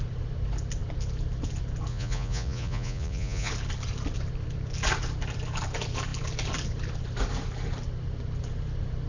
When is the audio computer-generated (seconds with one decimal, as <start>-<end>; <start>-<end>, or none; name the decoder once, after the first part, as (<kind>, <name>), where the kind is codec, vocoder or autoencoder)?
1.9-3.5 (vocoder, Vocos)